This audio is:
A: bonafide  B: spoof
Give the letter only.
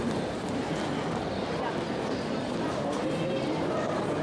A